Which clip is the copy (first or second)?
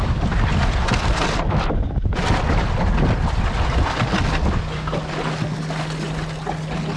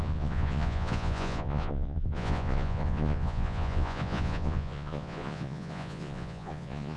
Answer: second